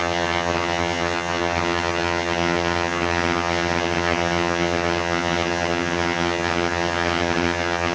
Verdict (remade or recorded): remade